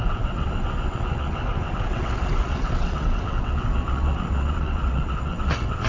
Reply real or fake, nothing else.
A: fake